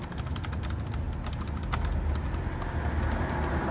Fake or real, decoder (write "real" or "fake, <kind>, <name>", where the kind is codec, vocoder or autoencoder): real